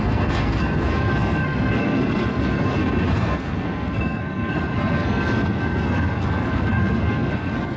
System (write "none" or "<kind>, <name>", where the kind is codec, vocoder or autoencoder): codec, SNAC